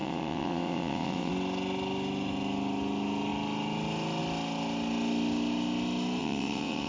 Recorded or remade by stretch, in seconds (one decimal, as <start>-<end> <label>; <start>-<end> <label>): 0.0-1.3 remade; 1.3-6.2 recorded; 6.2-6.9 remade